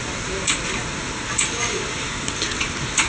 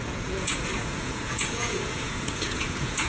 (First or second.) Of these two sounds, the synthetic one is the second